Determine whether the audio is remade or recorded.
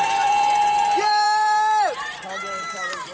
remade